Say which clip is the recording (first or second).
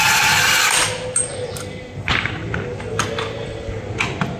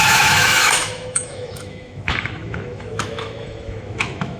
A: first